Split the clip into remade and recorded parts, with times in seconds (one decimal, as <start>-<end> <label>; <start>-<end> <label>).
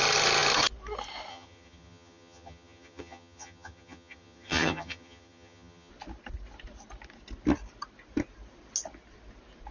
0.0-1.3 recorded; 1.3-5.9 remade; 5.9-9.7 recorded